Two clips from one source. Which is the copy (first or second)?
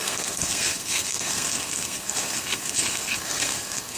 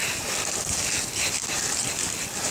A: first